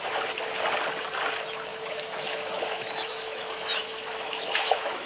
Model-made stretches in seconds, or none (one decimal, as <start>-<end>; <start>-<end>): 1.7-5.1